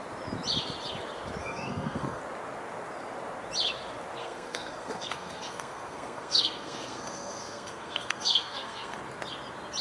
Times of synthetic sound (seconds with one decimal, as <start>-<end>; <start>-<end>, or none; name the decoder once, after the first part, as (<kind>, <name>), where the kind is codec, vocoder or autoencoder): 1.4-2.2 (codec, SNAC); 4.2-9.0